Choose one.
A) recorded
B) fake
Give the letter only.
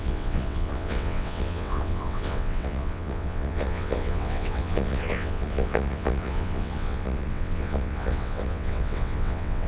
B